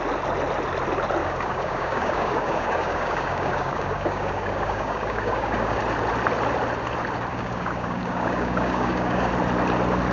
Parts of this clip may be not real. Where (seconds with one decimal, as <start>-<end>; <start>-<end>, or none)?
1.2-5.8; 7.3-9.3